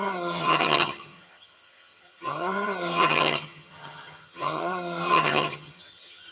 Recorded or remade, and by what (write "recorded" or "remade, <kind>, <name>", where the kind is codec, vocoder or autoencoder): remade, vocoder, HiFi-GAN